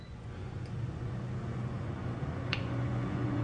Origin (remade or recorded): remade